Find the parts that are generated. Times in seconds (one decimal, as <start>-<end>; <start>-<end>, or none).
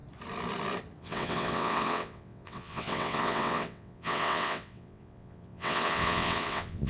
1.0-6.9